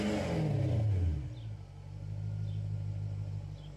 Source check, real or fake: real